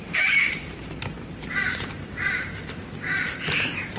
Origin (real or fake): fake